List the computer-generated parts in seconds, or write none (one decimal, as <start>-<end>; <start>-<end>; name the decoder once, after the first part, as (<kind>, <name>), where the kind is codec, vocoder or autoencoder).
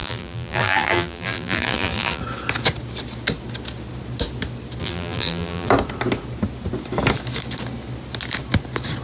0.0-2.2 (vocoder, BigVGAN v2); 4.8-5.7